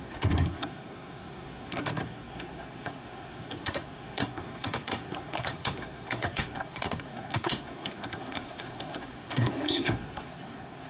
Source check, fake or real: fake